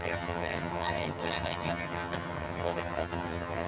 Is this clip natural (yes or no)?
no